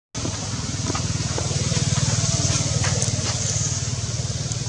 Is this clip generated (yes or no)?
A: no